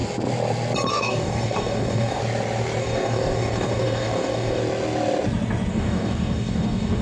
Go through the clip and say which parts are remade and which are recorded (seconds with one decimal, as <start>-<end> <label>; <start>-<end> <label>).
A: 0.0-0.9 recorded; 0.9-2.2 remade; 2.2-2.8 recorded; 2.8-4.6 remade; 4.6-5.7 recorded; 5.7-7.0 remade